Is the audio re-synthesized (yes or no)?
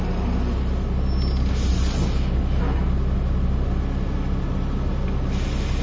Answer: no